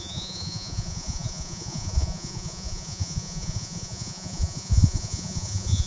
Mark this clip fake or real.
fake